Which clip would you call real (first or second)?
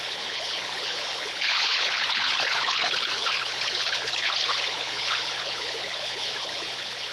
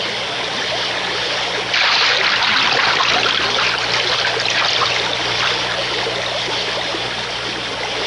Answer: second